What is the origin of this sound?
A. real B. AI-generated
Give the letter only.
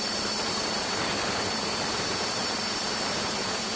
B